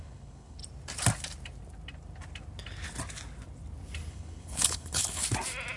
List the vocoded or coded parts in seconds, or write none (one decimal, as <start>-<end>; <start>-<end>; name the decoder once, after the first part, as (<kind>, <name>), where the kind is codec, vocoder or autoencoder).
0.0-0.6 (codec, HILCodec); 4.1-5.2